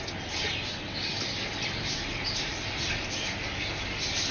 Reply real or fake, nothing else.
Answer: real